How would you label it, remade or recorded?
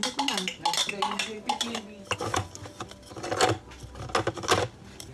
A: recorded